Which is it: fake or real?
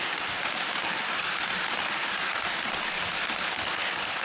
real